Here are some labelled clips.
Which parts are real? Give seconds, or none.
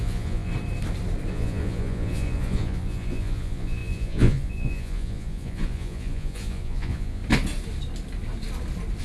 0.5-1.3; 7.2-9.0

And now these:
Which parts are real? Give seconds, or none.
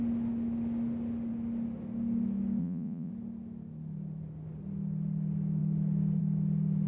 0.0-2.6; 3.1-6.9